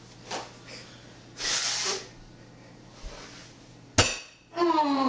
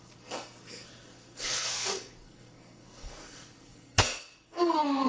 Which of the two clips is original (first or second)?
first